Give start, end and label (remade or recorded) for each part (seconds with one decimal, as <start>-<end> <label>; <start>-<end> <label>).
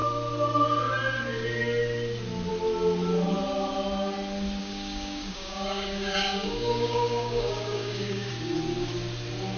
0.0-4.6 recorded; 4.6-8.3 remade; 8.3-9.6 recorded